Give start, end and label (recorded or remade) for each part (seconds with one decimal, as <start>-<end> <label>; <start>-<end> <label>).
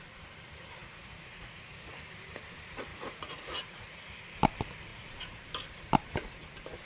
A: 0.0-0.8 recorded; 0.8-2.0 remade; 2.0-2.9 recorded; 2.9-4.2 remade; 4.2-4.9 recorded; 4.9-5.4 remade; 5.4-6.9 recorded